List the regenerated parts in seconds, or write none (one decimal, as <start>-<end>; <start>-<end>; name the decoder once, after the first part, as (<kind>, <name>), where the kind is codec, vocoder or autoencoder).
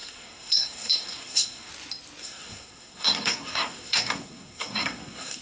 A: 0.0-1.7 (codec, SNAC); 2.2-5.4